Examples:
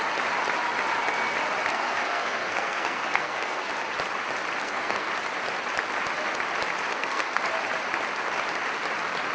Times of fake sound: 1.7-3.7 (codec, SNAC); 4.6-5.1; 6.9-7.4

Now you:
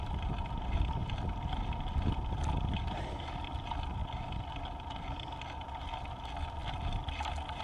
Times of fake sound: none